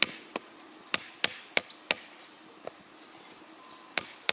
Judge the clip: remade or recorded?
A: recorded